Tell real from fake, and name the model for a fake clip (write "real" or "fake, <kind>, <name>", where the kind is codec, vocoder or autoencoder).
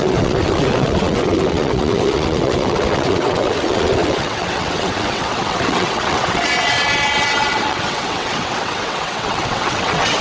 fake, vocoder, WaveNeXt